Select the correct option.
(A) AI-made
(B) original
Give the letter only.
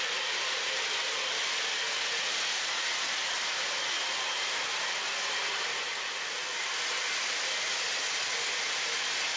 B